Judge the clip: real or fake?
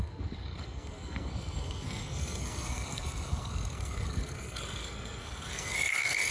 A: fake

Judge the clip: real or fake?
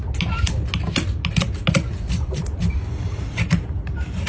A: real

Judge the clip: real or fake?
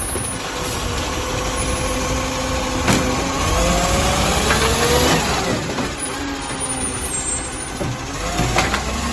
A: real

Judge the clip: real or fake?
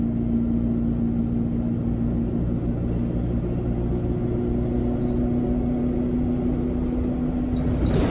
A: real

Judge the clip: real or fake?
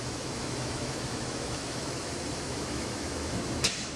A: fake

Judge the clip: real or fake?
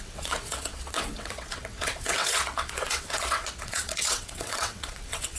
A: fake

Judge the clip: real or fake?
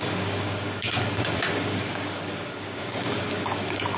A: fake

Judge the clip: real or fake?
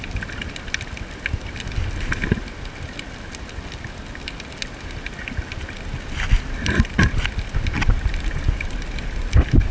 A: real